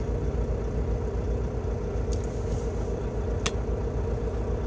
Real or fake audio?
real